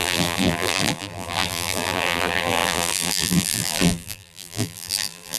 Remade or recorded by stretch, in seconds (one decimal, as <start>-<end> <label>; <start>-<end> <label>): 0.0-5.4 remade